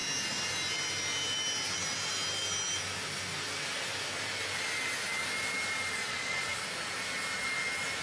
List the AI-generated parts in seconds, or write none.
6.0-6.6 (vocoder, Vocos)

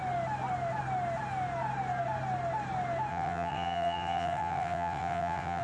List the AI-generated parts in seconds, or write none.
3.1-5.6 (vocoder, WaveNeXt)

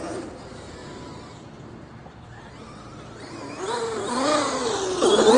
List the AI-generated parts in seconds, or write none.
none

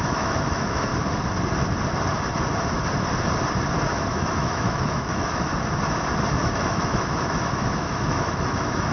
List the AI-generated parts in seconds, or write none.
0.0-0.9 (autoencoder, DAC-VAE); 4.1-5.5; 6.4-8.9

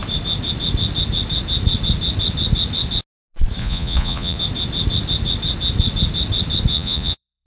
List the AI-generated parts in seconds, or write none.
3.6-4.4 (vocoder, Vocos); 6.7-7.5

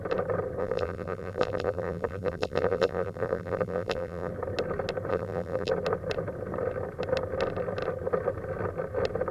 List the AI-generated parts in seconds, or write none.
0.6-4.3 (vocoder, BigVGAN v2); 5.1-5.7

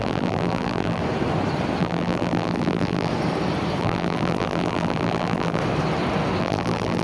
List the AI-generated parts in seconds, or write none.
0.0-1.0 (vocoder, BigVGAN v2); 1.8-3.1; 3.8-5.6; 6.4-7.0